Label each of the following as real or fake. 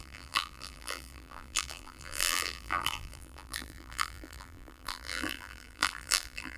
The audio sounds fake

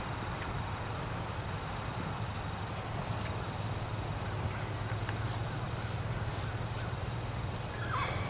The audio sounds real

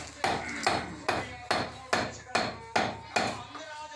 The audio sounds real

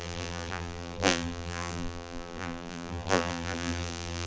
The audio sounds fake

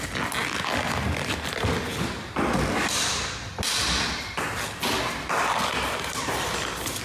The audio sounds real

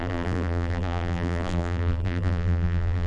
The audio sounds fake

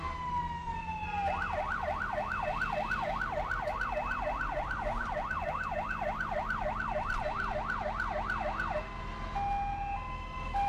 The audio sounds real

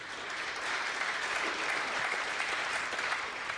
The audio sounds fake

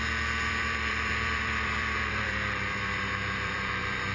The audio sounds fake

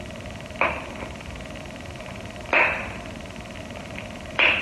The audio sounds real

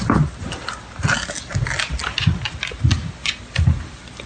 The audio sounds real